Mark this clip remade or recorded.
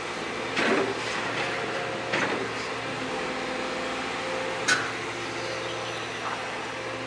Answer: recorded